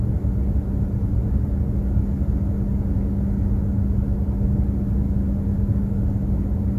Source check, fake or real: real